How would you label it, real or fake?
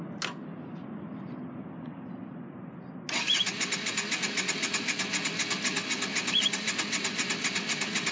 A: real